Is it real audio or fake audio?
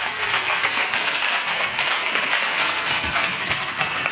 fake